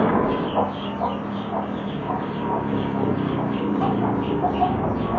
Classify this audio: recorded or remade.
remade